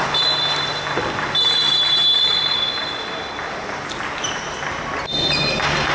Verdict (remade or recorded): recorded